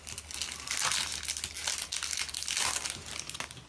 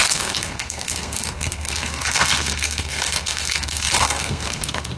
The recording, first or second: first